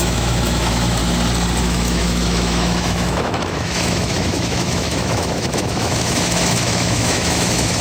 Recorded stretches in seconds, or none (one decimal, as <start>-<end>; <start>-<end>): 1.0-1.6